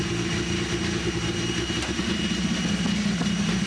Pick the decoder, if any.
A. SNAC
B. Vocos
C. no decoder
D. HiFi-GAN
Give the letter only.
C